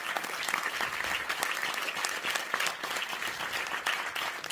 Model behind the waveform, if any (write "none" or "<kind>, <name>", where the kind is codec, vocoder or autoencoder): none